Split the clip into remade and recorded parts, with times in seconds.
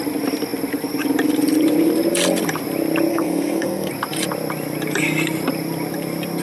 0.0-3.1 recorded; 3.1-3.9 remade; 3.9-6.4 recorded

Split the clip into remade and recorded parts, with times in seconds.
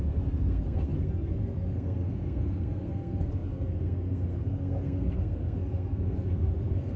0.0-7.0 remade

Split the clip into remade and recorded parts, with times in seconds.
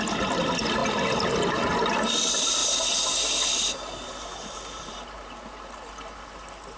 0.0-6.8 recorded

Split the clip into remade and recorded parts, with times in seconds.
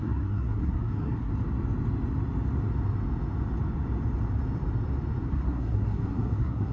0.0-1.3 remade; 1.3-5.3 recorded; 5.3-6.7 remade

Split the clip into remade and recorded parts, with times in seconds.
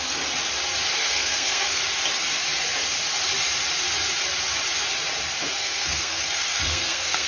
0.0-1.0 recorded; 1.0-1.8 remade; 1.8-5.5 recorded; 5.5-7.3 remade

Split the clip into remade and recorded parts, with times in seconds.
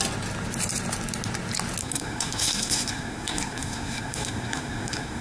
0.0-1.8 recorded; 1.8-5.2 remade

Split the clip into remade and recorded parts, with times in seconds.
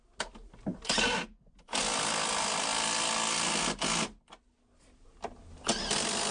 0.0-6.3 recorded